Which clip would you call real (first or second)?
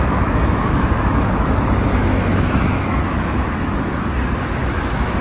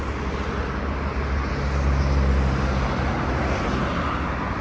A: second